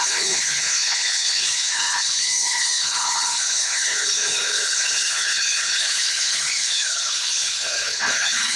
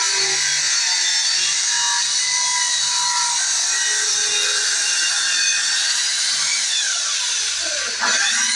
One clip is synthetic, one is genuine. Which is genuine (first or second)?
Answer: second